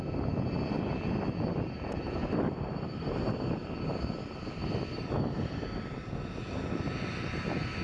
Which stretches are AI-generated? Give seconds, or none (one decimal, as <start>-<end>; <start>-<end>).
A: 2.2-3.7; 4.6-5.6